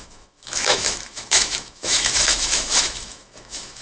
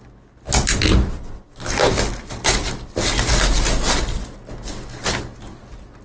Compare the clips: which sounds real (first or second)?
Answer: second